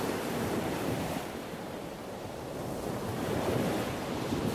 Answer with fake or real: fake